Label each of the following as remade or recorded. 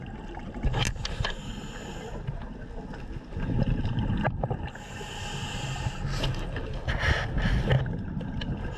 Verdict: recorded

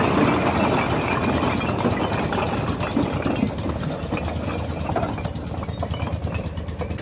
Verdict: recorded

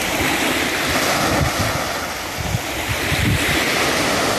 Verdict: recorded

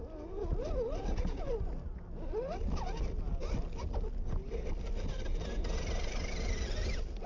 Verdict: recorded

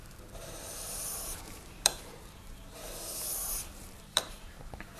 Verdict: remade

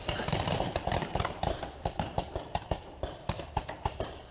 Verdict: remade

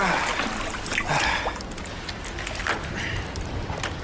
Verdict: recorded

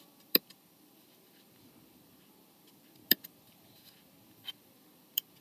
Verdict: remade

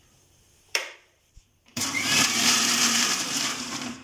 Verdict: remade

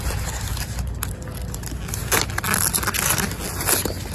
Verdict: recorded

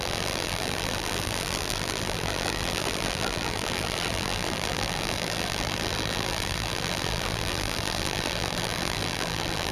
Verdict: remade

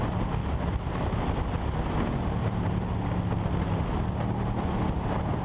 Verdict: recorded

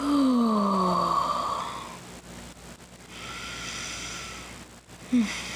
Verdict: recorded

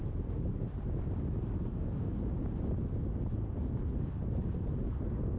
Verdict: recorded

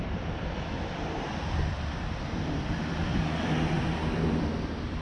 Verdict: remade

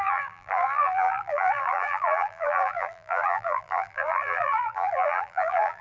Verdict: remade